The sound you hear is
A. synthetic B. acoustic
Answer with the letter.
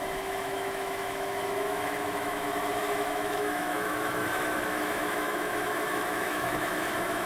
A